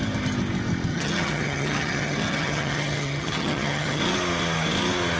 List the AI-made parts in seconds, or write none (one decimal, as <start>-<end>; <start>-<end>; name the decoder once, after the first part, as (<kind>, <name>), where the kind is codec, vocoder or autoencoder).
0.9-4.0 (vocoder, HiFi-GAN)